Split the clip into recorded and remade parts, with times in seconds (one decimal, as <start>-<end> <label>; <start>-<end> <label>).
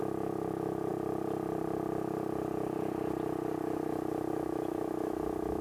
0.0-0.9 remade; 0.9-4.3 recorded; 4.3-5.6 remade